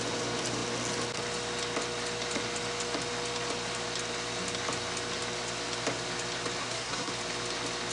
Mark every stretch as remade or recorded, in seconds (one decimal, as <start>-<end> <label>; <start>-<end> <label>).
0.0-6.6 recorded; 6.6-7.1 remade; 7.1-7.9 recorded